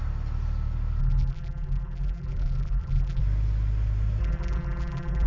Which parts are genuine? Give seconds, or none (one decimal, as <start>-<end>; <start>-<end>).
0.0-1.0; 3.2-4.2